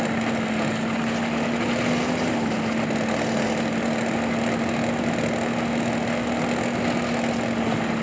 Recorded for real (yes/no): yes